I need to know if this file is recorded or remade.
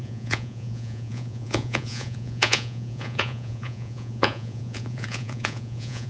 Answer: remade